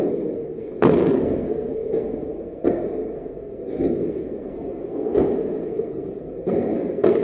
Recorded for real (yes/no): no